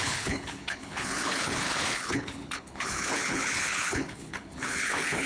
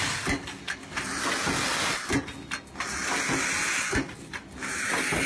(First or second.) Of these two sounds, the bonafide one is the second